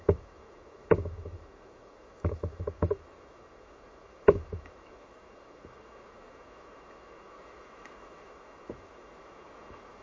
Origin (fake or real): fake